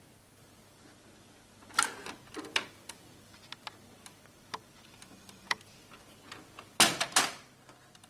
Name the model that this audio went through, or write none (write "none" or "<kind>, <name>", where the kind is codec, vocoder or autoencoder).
none